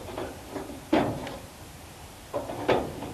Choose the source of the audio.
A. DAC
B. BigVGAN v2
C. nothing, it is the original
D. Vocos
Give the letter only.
B